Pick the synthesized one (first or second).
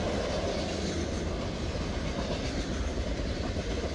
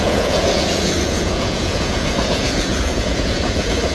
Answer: second